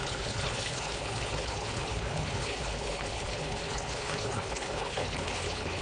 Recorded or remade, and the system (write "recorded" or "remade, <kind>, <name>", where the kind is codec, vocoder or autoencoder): remade, codec, HILCodec